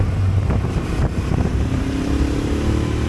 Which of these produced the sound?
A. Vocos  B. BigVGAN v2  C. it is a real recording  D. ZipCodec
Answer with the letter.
B